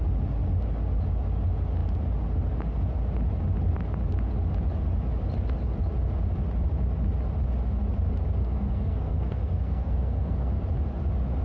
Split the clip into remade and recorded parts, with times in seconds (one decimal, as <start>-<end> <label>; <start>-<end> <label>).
0.0-8.4 recorded; 8.4-10.5 remade; 10.5-11.4 recorded